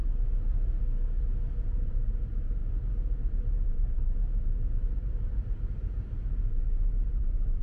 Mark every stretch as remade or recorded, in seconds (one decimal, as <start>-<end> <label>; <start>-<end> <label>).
0.0-1.6 recorded; 1.6-7.6 remade